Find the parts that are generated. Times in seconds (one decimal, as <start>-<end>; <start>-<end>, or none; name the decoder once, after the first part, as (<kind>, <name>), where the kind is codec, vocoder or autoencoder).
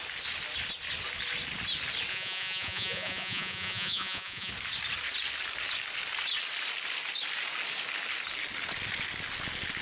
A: 2.1-4.5 (vocoder, Vocos)